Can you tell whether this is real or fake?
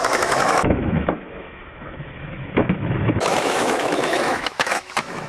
fake